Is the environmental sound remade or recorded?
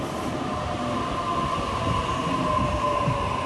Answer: recorded